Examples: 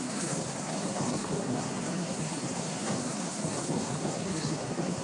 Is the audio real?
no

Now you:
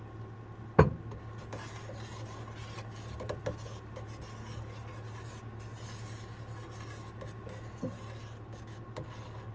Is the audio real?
yes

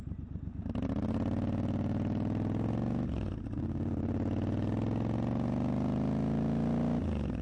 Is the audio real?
yes